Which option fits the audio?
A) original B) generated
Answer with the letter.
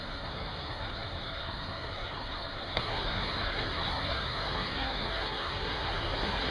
B